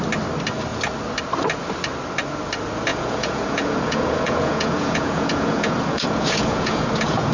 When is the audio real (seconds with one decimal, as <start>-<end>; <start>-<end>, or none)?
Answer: 0.0-2.9